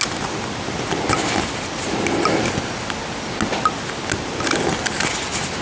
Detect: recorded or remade recorded